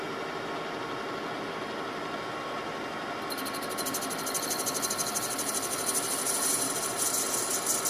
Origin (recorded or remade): recorded